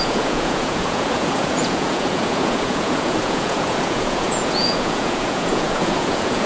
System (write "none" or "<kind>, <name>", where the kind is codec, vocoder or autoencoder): vocoder, Vocos